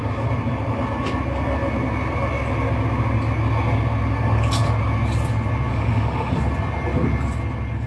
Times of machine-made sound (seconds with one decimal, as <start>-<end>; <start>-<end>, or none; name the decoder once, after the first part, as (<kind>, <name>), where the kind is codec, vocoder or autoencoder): 5.7-6.4 (autoencoder, DAC-VAE)